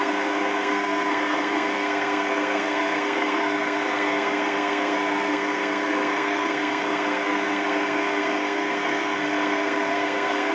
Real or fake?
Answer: fake